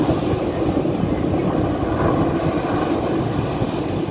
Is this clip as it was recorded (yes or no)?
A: yes